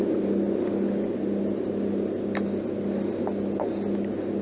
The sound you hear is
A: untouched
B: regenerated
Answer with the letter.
A